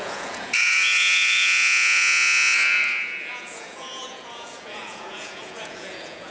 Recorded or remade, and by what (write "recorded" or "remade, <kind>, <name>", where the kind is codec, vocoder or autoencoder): remade, vocoder, Vocos